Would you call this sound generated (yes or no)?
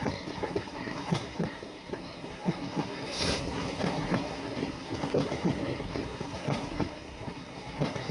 yes